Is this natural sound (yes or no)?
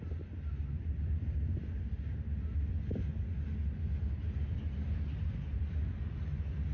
yes